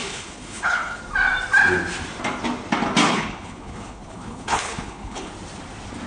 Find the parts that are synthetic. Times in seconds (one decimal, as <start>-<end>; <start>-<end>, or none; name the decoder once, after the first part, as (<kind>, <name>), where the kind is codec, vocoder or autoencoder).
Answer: 0.0-1.0 (codec, HILCodec); 3.1-5.3